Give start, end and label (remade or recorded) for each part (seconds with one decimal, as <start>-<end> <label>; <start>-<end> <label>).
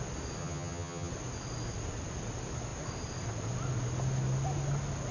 0.0-0.4 recorded; 0.4-1.1 remade; 1.1-5.1 recorded